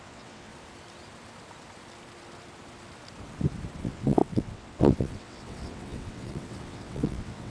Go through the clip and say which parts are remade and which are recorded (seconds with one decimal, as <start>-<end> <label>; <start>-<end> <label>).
0.0-0.5 remade; 0.5-3.8 recorded; 3.8-7.5 remade